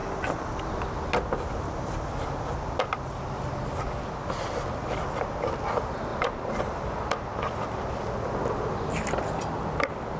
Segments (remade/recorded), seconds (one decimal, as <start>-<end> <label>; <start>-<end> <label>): 0.0-6.1 recorded; 6.1-7.0 remade; 7.0-10.2 recorded